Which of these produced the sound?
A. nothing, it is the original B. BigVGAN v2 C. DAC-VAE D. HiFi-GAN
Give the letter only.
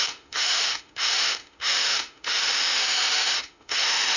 C